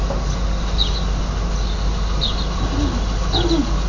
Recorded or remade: recorded